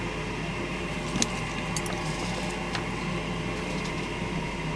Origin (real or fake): real